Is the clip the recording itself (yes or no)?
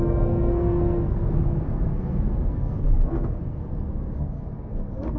no